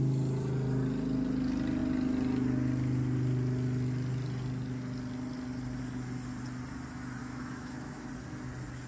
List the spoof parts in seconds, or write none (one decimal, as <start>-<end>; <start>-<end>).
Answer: 7.2-8.1